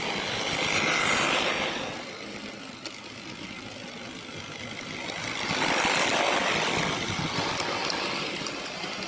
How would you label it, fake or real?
real